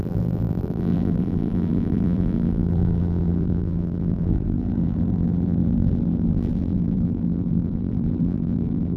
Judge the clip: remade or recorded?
remade